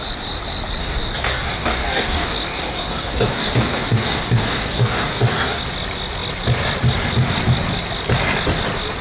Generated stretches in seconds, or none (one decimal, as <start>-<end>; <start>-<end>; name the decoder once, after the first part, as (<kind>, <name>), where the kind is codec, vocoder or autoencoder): 0.8-5.6 (codec, DAC)